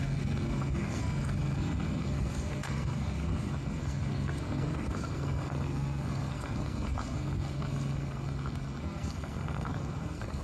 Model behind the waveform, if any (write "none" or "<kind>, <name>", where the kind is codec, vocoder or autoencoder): codec, SNAC